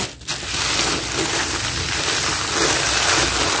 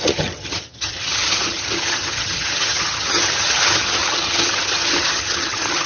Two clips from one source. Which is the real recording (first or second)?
first